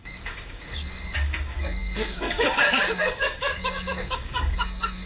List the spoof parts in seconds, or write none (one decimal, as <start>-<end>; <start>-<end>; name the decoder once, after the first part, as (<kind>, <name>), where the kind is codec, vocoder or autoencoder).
0.0-5.1 (codec, DAC)

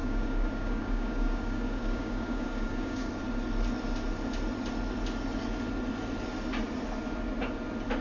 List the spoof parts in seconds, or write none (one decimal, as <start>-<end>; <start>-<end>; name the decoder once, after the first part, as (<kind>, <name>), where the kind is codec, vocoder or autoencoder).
0.0-3.1 (codec, DAC)

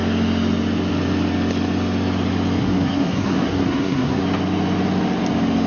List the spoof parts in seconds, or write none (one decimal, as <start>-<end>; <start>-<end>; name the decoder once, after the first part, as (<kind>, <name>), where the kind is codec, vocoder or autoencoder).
2.6-4.2 (codec, SNAC)

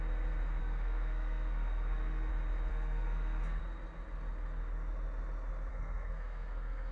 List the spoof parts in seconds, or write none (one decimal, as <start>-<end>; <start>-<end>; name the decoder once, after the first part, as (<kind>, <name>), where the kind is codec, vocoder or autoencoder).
0.6-2.3 (codec, SNAC); 2.7-3.6; 5.7-6.9

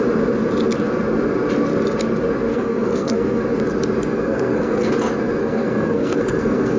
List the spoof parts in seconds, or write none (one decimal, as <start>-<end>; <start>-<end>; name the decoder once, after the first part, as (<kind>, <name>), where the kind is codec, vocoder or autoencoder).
2.5-3.4 (codec, SNAC); 4.1-4.9; 5.4-6.8

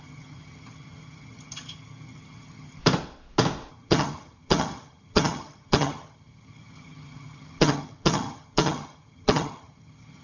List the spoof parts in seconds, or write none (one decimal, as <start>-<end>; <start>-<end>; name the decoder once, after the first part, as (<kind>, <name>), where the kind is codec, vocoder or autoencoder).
0.0-2.8 (vocoder, HiFi-GAN); 3.7-10.2